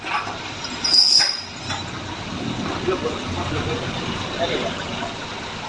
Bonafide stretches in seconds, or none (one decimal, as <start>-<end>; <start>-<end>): 0.0-5.7